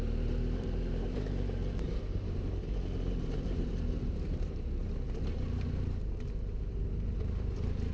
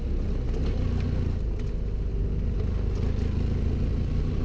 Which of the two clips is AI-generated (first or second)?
first